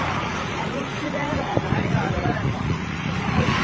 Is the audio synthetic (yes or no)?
yes